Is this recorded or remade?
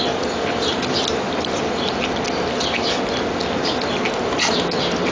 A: recorded